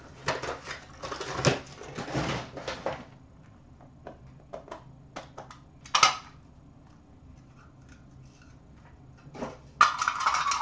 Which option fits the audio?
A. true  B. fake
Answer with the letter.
A